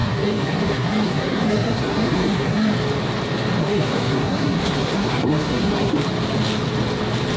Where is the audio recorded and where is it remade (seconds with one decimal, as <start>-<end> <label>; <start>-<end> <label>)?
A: 0.0-2.7 remade; 2.7-3.6 recorded; 3.6-5.9 remade; 5.9-7.4 recorded